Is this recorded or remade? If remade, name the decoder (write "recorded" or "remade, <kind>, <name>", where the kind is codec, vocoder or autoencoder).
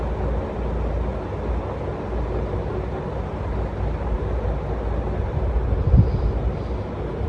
recorded